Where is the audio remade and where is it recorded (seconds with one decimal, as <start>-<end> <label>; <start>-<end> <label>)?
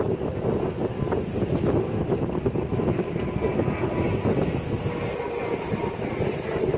0.0-0.8 recorded; 0.8-1.6 remade; 1.6-6.8 recorded